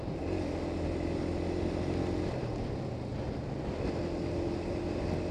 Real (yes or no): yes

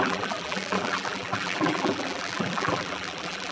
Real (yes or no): no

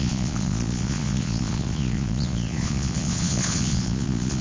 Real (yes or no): no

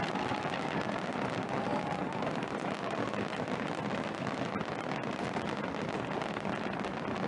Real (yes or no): yes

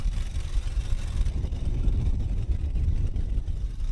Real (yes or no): no